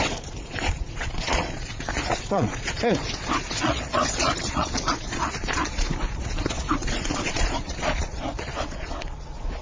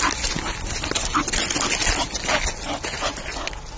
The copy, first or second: first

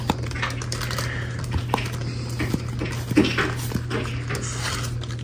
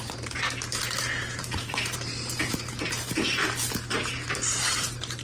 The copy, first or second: second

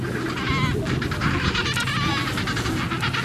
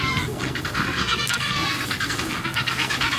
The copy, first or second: second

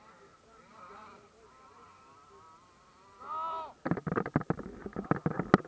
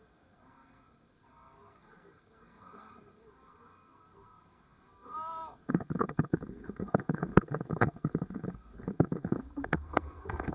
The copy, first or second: second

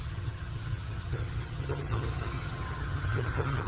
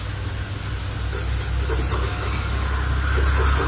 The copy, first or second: first